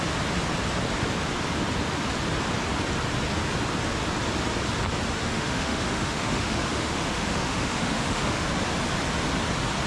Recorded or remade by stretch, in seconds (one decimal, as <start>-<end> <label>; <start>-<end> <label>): 0.0-5.2 recorded; 5.2-8.5 remade; 8.5-9.9 recorded